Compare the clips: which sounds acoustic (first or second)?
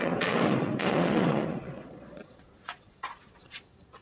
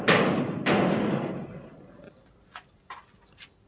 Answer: second